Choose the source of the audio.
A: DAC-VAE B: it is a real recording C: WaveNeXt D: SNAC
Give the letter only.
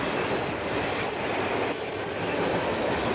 B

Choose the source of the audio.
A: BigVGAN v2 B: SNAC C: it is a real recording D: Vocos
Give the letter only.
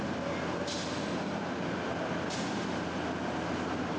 C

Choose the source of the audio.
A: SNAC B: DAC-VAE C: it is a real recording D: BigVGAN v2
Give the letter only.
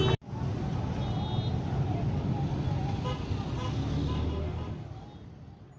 C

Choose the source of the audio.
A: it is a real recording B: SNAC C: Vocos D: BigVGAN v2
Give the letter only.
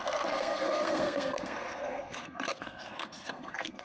B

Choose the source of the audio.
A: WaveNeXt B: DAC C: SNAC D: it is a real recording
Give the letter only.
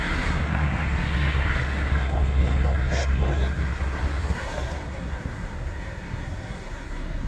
C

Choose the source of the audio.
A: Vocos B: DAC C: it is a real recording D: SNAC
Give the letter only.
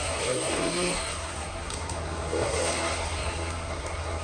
D